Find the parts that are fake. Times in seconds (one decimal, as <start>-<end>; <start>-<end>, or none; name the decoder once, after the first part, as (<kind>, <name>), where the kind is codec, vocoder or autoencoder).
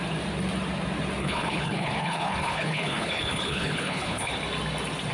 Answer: 1.2-4.3 (codec, HILCodec)